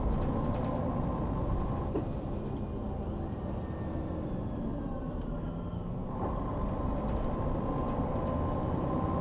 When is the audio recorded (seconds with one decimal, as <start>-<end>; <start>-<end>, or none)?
0.0-4.7; 5.3-6.0; 8.1-9.2